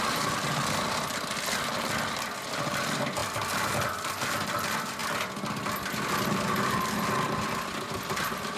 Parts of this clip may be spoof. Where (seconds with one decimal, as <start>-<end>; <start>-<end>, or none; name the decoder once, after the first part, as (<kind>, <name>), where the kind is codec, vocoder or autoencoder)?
none

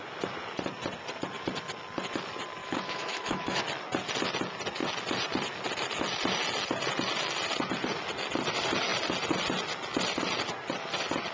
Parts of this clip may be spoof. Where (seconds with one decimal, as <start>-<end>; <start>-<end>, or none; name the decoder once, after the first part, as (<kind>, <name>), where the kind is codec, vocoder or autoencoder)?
2.6-3.6 (autoencoder, DAC-VAE)